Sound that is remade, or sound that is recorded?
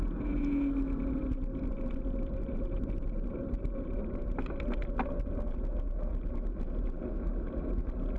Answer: recorded